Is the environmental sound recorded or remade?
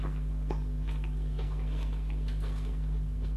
remade